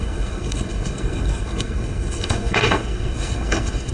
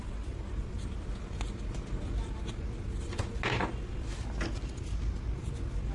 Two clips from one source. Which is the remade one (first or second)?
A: first